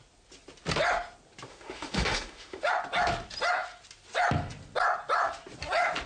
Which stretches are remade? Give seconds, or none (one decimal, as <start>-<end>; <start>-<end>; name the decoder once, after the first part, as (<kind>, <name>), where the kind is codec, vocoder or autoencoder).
1.5-2.7 (autoencoder, DAC-VAE)